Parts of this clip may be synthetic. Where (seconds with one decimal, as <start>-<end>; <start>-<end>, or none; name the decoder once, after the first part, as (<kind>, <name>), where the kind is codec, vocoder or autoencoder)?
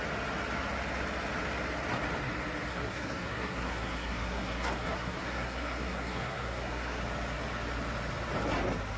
2.7-7.0 (codec, SNAC)